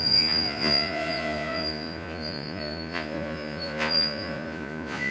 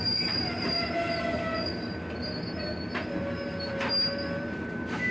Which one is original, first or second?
second